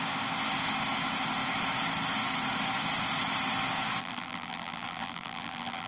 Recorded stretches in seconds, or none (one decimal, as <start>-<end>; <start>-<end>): 0.0-4.0